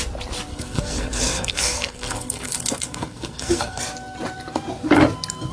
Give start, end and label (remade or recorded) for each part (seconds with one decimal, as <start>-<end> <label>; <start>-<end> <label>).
0.0-0.5 recorded; 0.5-3.8 remade; 3.8-5.5 recorded

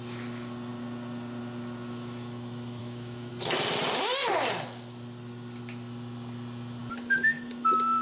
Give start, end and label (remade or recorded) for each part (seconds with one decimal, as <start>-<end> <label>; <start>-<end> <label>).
0.0-2.8 recorded; 2.8-3.3 remade; 3.3-8.0 recorded

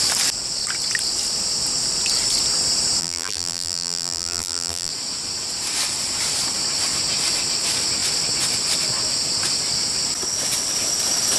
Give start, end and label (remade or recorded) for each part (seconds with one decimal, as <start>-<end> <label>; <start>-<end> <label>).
0.0-3.0 recorded; 3.0-4.9 remade; 4.9-11.4 recorded

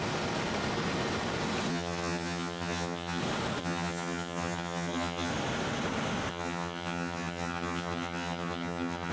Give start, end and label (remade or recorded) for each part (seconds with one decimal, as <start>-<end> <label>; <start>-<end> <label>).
0.0-1.7 recorded; 1.7-3.2 remade; 3.2-3.6 recorded; 3.6-5.3 remade; 5.3-6.3 recorded; 6.3-9.1 remade

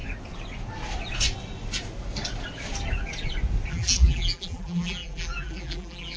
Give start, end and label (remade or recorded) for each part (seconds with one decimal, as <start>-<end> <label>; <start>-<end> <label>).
0.0-3.7 recorded; 3.7-6.2 remade

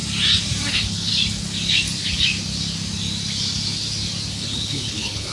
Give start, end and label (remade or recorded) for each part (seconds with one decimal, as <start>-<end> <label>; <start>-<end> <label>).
0.0-0.7 recorded; 0.7-1.1 remade; 1.1-4.3 recorded; 4.3-5.3 remade

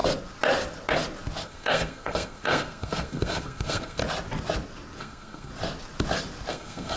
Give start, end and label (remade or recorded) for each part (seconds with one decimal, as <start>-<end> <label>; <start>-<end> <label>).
0.0-1.4 recorded; 1.4-4.0 remade; 4.0-5.0 recorded; 5.0-5.5 remade; 5.5-6.5 recorded; 6.5-7.0 remade